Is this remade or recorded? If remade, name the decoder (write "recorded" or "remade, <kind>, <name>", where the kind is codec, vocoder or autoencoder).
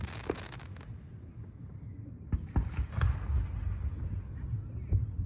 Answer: recorded